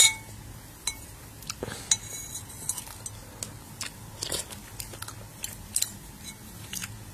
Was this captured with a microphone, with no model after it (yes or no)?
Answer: yes